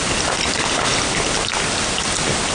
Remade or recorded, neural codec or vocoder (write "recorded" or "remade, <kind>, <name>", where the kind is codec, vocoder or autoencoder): recorded